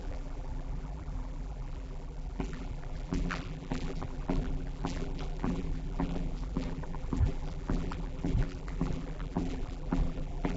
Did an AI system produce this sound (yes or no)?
yes